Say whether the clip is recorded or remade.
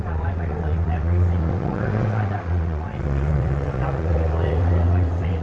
remade